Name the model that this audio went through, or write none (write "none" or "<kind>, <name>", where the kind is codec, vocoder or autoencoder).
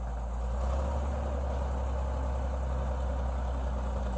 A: none